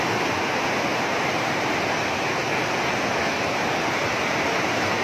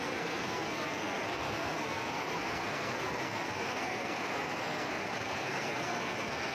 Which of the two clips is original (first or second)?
first